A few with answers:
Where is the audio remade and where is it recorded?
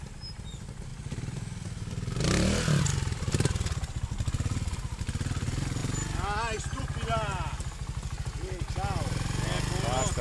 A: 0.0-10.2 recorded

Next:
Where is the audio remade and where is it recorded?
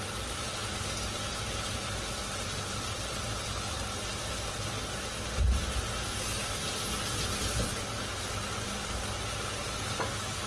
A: 0.0-10.5 recorded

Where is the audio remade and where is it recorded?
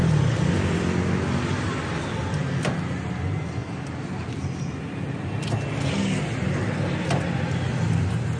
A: 0.0-8.4 recorded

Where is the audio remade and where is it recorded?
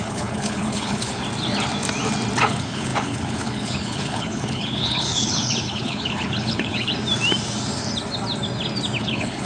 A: 0.0-1.2 remade; 1.2-2.4 recorded; 2.4-6.9 remade; 6.9-9.0 recorded; 9.0-9.5 remade